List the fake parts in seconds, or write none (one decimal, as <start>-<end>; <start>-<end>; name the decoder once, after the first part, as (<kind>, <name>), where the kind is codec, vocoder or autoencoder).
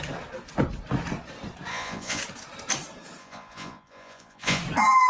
1.7-2.2 (vocoder, Vocos); 3.2-4.6